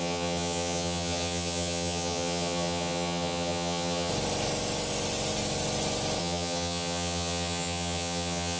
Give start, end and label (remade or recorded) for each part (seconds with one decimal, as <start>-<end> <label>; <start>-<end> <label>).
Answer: 0.0-4.1 remade; 4.1-6.2 recorded; 6.2-8.6 remade